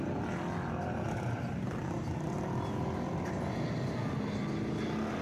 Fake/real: real